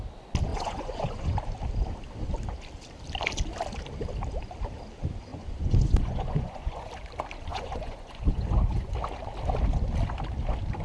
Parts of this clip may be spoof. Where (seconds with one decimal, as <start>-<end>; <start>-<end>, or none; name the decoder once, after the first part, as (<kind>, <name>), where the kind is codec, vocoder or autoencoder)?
0.5-1.3 (vocoder, Vocos); 5.3-6.9; 7.5-8.9